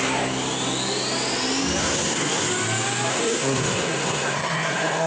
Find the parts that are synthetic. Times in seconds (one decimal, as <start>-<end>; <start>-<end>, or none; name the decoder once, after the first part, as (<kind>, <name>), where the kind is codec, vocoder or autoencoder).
1.8-2.5 (codec, SNAC); 3.1-5.1